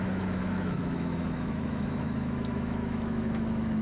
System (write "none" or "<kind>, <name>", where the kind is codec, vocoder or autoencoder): autoencoder, DAC-VAE